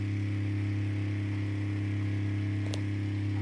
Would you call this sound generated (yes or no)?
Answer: no